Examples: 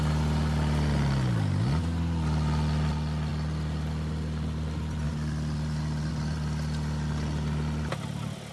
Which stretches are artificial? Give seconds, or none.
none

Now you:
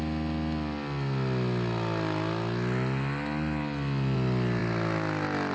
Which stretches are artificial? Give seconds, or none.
none

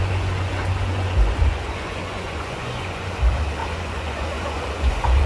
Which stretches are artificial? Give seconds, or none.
0.0-3.2 (vocoder, Vocos); 3.6-5.3

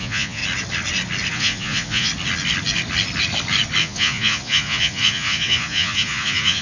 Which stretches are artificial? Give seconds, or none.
0.0-0.4 (vocoder, Vocos); 1.3-2.1; 3.8-6.6

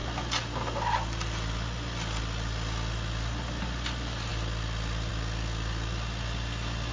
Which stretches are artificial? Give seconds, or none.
none

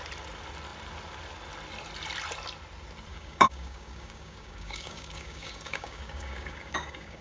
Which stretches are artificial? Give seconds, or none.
3.1-7.2 (codec, DAC)

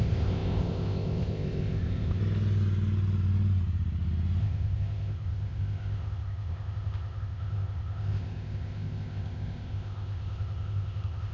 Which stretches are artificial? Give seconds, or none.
0.0-2.2 (codec, ZipCodec); 4.4-11.3

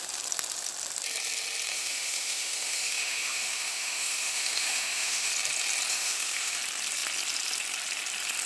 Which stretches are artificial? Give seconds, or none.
1.7-5.3 (autoencoder, DAC-VAE); 5.9-6.6